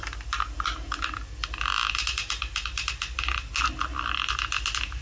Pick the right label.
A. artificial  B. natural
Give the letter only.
B